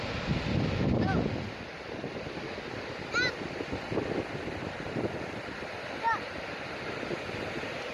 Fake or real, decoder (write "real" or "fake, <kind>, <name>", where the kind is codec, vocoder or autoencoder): real